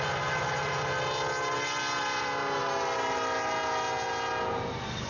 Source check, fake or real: real